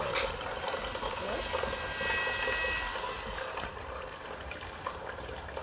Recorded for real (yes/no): yes